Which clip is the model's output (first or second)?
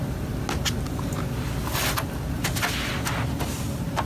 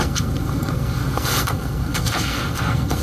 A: second